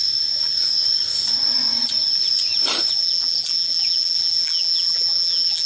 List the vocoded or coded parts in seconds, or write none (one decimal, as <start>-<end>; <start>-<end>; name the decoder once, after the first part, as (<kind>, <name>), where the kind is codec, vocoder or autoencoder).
3.0-5.7 (vocoder, BigVGAN v2)